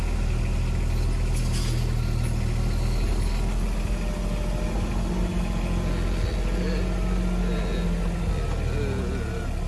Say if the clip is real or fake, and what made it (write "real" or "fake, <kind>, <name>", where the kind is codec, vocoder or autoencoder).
real